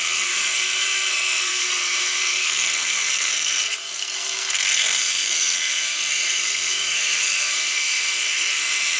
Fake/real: fake